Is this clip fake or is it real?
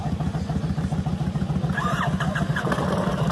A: real